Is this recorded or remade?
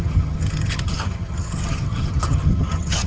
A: remade